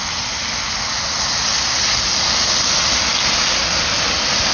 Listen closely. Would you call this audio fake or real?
real